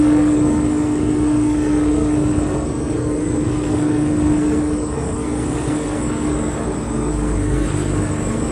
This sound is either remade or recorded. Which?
remade